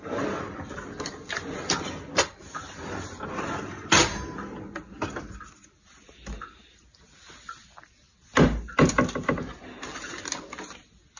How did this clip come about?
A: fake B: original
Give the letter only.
B